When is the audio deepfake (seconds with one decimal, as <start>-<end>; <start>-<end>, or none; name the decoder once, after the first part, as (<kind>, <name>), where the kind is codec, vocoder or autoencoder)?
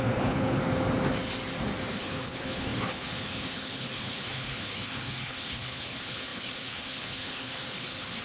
0.0-0.6 (codec, HILCodec); 1.9-8.2